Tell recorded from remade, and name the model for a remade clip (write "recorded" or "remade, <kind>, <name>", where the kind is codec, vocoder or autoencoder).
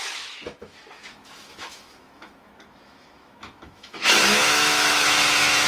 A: remade, autoencoder, DAC-VAE